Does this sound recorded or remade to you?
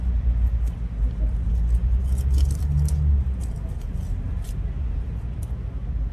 recorded